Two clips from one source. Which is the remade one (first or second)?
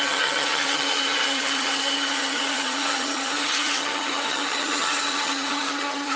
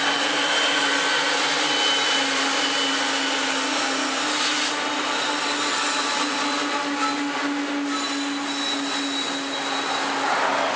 first